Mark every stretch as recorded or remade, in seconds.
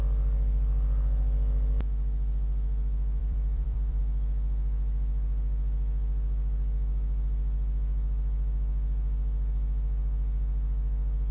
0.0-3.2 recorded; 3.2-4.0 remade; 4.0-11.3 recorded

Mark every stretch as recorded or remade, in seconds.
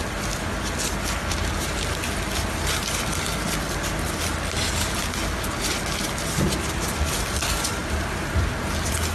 0.0-7.8 recorded; 7.8-8.5 remade; 8.5-9.1 recorded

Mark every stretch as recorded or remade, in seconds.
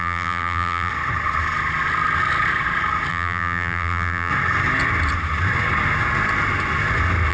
0.0-0.9 remade; 0.9-3.1 recorded; 3.1-4.3 remade; 4.3-7.3 recorded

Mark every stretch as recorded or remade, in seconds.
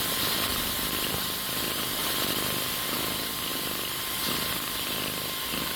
0.0-0.5 recorded; 0.5-2.0 remade; 2.0-3.5 recorded; 3.5-4.5 remade; 4.5-5.8 recorded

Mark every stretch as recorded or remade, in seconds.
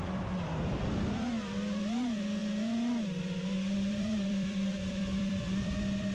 0.0-6.1 remade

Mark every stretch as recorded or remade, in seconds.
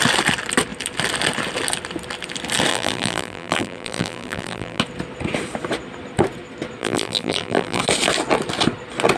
0.0-2.7 recorded; 2.7-4.8 remade; 4.8-6.8 recorded; 6.8-7.8 remade; 7.8-9.2 recorded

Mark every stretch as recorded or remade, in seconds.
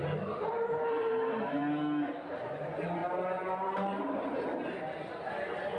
0.0-1.6 remade; 1.6-2.3 recorded; 2.3-4.5 remade; 4.5-5.8 recorded